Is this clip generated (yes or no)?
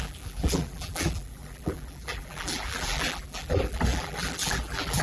yes